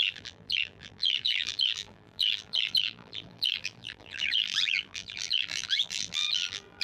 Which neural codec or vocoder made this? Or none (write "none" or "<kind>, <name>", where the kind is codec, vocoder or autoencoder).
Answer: vocoder, BigVGAN v2